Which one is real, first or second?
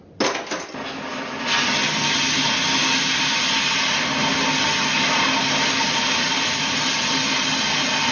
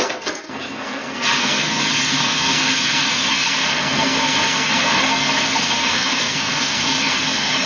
first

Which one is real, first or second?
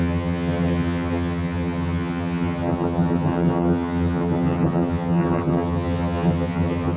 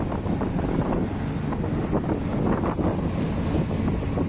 second